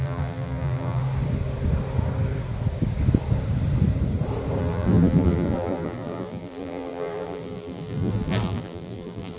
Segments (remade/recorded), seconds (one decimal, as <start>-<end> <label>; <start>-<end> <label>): 0.0-1.0 remade; 1.0-4.6 recorded; 4.6-9.4 remade